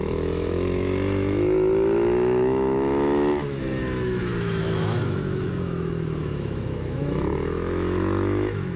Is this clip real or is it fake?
fake